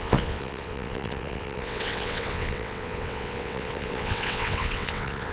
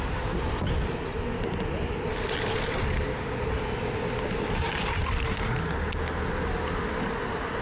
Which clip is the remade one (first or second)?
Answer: first